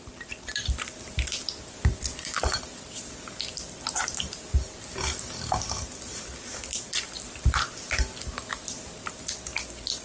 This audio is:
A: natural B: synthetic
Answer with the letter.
A